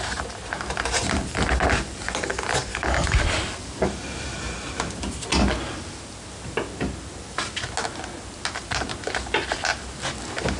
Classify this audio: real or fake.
real